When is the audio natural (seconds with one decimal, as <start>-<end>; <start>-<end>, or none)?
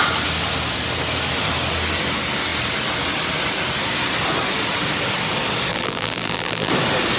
0.0-5.7; 6.7-7.2